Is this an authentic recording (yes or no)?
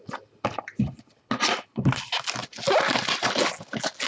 yes